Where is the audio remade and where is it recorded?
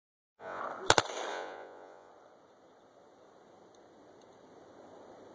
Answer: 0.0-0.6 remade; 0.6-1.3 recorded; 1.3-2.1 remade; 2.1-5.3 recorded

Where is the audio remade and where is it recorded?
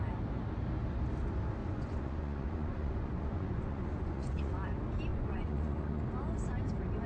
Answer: 0.0-1.6 recorded; 1.6-4.5 remade; 4.5-5.1 recorded; 5.1-6.1 remade; 6.1-7.1 recorded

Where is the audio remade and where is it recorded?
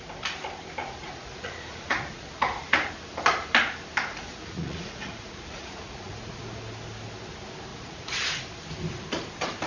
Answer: 0.0-0.8 recorded; 0.8-2.9 remade; 2.9-4.3 recorded; 4.3-6.4 remade; 6.4-7.7 recorded; 7.7-8.4 remade; 8.4-9.7 recorded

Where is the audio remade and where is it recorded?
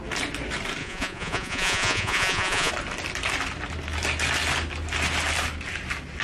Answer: 0.0-0.8 recorded; 0.8-2.7 remade; 2.7-6.2 recorded